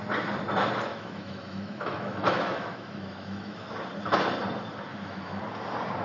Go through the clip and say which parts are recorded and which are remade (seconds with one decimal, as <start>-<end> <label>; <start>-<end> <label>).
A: 0.0-0.9 recorded; 0.9-3.7 remade; 3.7-4.9 recorded; 4.9-5.4 remade; 5.4-6.0 recorded